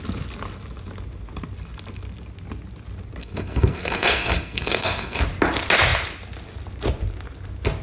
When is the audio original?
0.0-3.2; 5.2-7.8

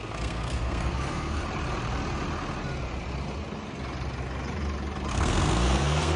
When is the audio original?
1.4-5.1